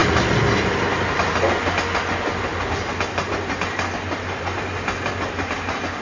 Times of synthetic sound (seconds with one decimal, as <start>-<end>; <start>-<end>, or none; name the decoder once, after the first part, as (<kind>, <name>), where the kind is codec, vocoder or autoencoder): none